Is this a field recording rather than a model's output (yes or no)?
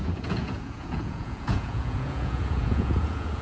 no